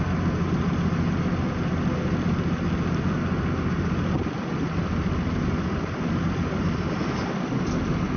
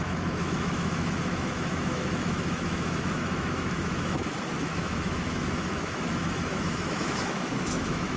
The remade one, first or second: second